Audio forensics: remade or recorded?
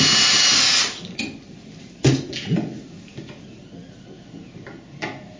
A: recorded